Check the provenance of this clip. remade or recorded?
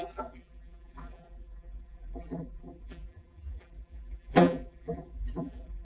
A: remade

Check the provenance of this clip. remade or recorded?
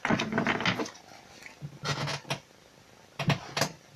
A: recorded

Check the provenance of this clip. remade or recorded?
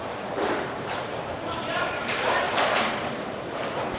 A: remade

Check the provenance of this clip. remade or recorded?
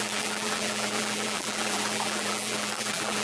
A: remade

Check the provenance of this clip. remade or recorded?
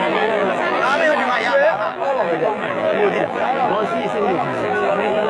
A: remade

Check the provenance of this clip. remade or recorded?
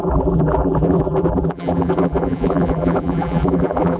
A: remade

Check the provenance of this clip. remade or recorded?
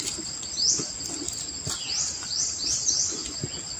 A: recorded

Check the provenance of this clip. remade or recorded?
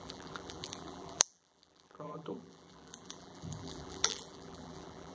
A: remade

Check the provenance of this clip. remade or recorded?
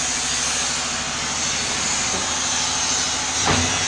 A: recorded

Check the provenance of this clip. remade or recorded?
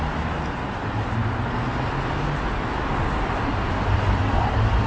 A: recorded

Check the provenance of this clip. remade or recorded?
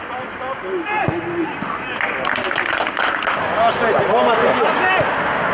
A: recorded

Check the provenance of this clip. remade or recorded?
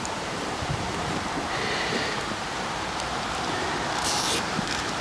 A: remade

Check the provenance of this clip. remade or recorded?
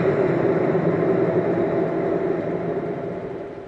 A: remade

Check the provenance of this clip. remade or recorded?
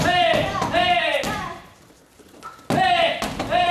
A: recorded